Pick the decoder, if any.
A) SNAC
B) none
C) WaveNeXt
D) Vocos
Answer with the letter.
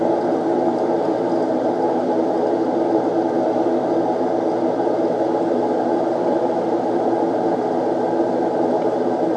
B